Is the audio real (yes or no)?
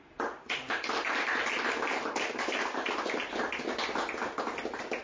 yes